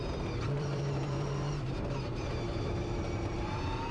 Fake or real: fake